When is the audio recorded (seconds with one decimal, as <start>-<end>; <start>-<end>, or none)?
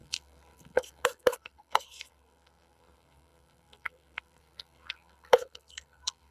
none